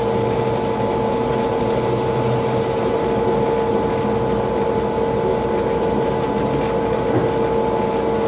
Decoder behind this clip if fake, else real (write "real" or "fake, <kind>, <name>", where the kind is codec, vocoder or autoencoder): real